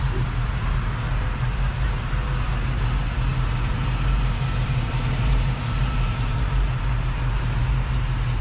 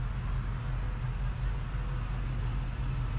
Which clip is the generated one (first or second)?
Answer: first